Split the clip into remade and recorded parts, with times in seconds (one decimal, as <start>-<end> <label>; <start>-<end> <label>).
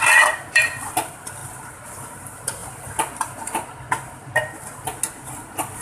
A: 0.0-1.4 remade; 1.4-2.2 recorded; 2.2-4.4 remade; 4.4-5.8 recorded